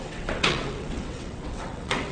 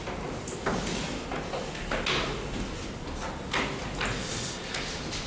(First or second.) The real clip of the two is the second